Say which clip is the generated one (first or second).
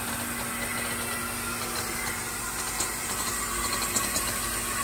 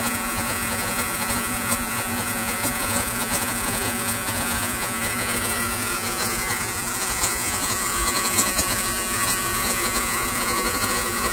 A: second